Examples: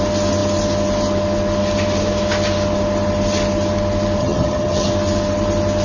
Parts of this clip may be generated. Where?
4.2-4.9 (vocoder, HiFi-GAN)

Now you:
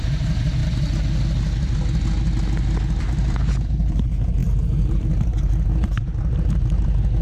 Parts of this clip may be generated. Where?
0.0-0.6 (vocoder, BigVGAN v2); 3.0-7.2

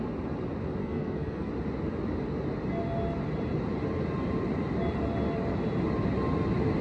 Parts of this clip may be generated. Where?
0.8-1.5 (codec, SNAC)

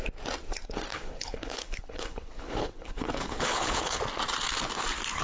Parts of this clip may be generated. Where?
0.9-4.0 (codec, HILCodec)